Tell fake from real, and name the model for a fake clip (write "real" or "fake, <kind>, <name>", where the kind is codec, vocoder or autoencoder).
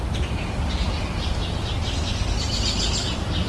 real